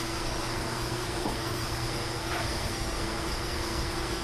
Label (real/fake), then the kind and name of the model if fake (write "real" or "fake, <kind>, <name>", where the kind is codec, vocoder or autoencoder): fake, codec, SNAC